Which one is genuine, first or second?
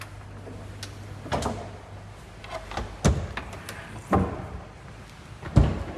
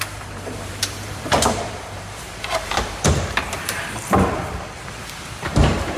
first